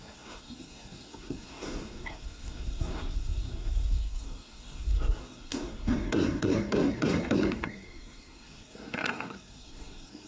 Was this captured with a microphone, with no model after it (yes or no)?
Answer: no